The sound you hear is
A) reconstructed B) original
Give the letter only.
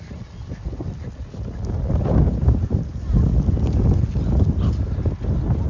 B